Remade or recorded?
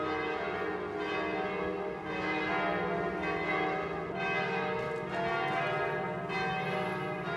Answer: recorded